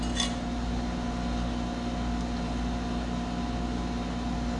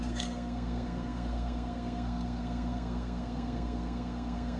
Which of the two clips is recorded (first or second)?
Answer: first